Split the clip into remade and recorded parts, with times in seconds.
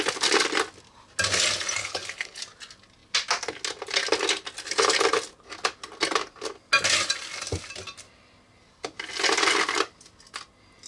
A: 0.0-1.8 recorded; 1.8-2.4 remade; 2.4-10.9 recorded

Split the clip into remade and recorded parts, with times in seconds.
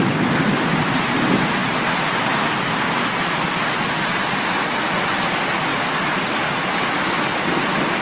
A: 0.0-8.0 recorded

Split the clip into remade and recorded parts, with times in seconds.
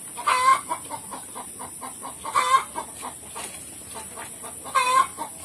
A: 0.0-5.4 recorded